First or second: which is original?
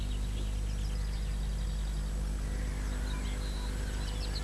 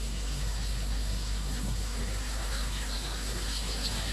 first